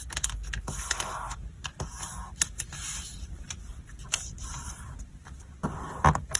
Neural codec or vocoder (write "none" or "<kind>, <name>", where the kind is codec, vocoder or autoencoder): none